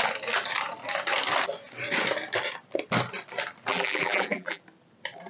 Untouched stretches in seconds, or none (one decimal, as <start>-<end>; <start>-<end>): 0.0-3.7; 4.6-5.3

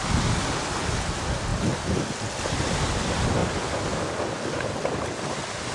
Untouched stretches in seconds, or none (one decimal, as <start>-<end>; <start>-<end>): 0.0-5.7

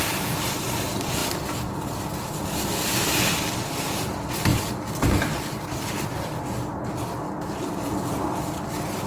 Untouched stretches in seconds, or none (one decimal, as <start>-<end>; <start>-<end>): 1.2-3.3; 4.5-9.1

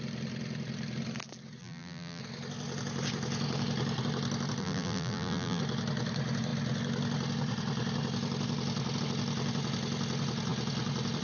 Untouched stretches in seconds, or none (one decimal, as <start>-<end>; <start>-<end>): 0.0-1.6; 2.2-4.6; 5.6-11.2

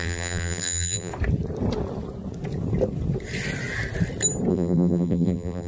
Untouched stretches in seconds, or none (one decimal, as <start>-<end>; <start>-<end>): 1.1-4.5

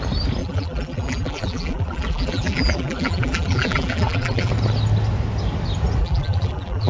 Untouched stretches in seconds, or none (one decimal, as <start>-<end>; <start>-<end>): 0.0-0.4; 4.5-6.0